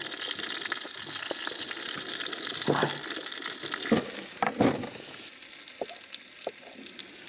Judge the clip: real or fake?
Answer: real